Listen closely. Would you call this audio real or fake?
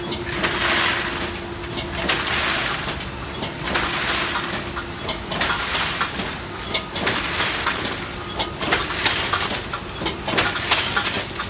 real